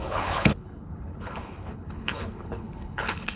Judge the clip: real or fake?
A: fake